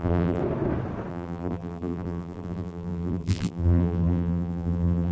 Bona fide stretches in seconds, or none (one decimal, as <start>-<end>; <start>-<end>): 0.4-1.1